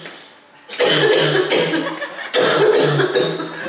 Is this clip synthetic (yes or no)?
no